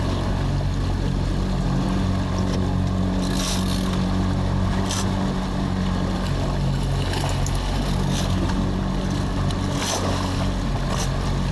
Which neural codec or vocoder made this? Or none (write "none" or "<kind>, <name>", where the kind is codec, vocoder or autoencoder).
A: none